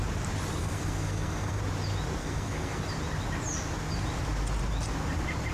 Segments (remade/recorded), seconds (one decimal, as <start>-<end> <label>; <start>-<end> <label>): 0.0-0.6 recorded; 0.6-1.6 remade; 1.6-2.2 recorded; 2.2-2.8 remade; 2.8-5.5 recorded